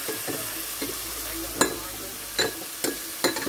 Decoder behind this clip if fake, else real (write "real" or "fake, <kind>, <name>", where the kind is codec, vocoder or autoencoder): real